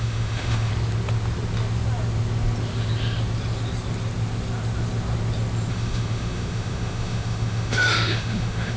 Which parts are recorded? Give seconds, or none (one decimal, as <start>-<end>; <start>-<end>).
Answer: 0.7-5.7